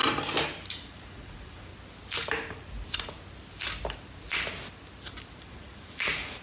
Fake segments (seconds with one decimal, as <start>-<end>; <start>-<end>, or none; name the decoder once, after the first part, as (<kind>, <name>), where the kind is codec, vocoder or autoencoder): 0.7-1.7 (vocoder, Vocos); 5.5-6.4